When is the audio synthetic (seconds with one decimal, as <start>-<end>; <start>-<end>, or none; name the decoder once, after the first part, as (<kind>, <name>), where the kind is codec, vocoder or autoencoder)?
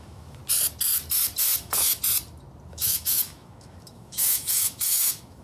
0.0-0.4 (autoencoder, DAC-VAE); 1.4-2.0; 2.7-5.4